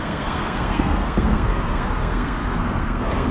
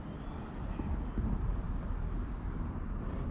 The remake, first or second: first